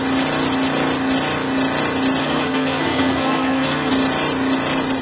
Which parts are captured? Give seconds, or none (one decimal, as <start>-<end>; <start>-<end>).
0.0-2.2; 3.9-5.0